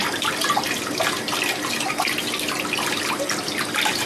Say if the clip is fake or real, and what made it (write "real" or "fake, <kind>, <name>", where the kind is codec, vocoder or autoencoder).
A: fake, vocoder, BigVGAN v2